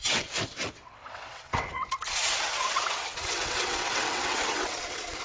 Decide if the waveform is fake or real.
fake